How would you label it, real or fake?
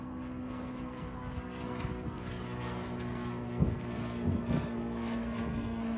fake